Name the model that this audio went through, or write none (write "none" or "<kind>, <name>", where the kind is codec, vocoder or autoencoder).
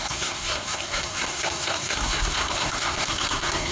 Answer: codec, SNAC